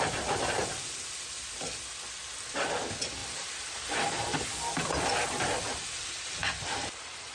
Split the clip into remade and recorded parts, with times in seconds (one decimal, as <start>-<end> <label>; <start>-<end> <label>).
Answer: 0.0-3.2 recorded; 3.2-5.7 remade; 5.7-6.4 recorded; 6.4-7.3 remade